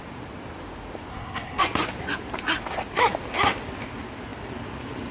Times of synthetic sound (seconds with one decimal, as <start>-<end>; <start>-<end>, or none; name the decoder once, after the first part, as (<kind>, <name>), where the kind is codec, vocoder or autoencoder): 1.1-1.6 (codec, SNAC)